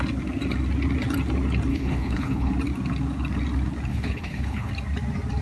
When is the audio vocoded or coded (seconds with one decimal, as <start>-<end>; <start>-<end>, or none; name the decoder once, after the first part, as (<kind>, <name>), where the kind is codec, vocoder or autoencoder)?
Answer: 1.7-2.5 (codec, HILCodec); 3.9-4.7